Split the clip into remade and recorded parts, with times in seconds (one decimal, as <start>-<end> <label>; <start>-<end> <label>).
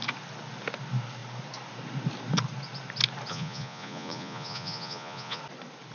0.0-3.3 recorded; 3.3-5.4 remade; 5.4-5.9 recorded